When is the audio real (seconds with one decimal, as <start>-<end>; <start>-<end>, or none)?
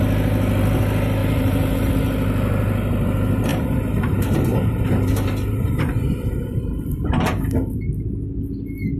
0.0-1.2; 1.9-3.5; 6.6-9.0